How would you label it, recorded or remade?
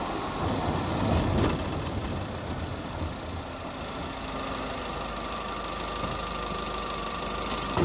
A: recorded